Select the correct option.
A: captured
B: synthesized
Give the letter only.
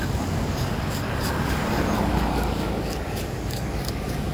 B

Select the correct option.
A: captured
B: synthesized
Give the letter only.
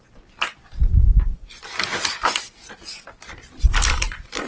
A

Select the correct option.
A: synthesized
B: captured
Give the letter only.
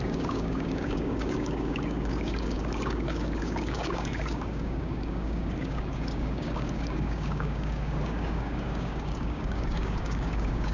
A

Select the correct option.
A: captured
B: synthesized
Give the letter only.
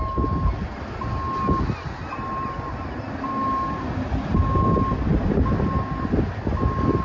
A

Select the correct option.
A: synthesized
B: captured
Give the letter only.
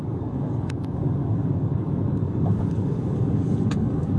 A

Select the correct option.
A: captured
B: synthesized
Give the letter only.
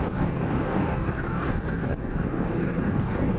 B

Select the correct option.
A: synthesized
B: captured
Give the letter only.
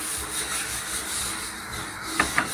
A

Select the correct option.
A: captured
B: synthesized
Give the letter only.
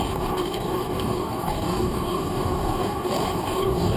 B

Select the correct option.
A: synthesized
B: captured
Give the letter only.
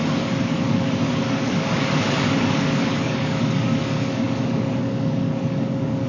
A